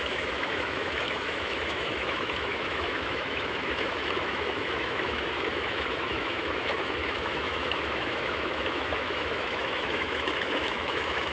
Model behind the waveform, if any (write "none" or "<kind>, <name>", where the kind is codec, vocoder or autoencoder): autoencoder, DAC-VAE